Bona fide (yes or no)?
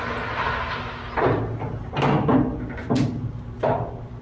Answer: yes